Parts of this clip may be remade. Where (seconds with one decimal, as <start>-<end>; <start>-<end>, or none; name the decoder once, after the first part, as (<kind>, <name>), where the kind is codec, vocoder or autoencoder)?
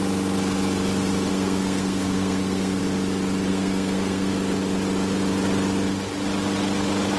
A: 1.3-2.8 (codec, SNAC); 3.5-4.3